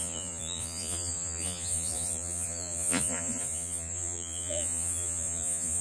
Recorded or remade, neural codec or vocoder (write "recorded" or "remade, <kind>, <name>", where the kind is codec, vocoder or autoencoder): remade, vocoder, Vocos